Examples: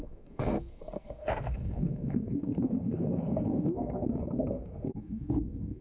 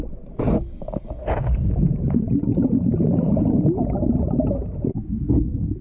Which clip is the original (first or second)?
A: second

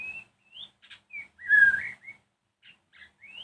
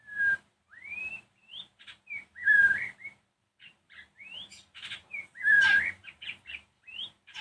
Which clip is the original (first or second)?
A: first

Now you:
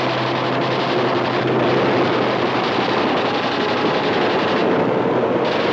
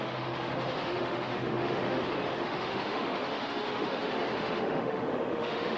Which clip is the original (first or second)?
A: first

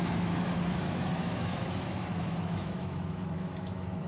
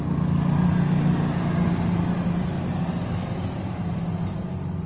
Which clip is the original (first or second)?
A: second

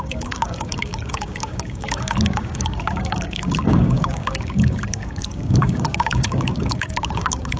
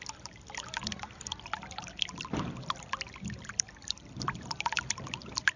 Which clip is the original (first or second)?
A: second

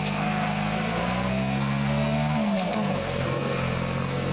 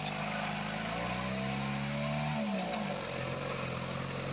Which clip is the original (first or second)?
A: second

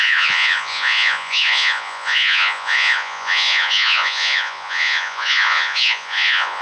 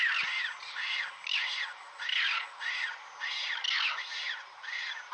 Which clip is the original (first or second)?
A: second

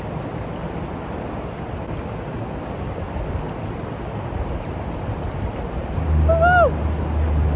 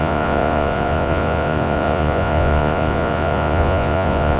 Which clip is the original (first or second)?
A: first